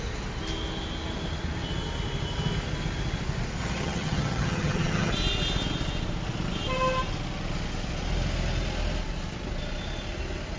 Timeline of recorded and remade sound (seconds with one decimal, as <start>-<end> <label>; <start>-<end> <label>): 0.0-3.6 recorded; 3.6-5.1 remade; 5.1-10.6 recorded